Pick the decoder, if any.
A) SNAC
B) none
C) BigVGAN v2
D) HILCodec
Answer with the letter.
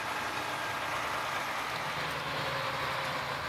B